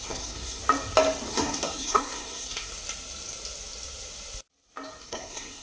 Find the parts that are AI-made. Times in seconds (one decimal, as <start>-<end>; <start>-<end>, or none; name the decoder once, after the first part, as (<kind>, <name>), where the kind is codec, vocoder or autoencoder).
0.0-0.6 (codec, SNAC); 1.3-2.7; 5.0-5.6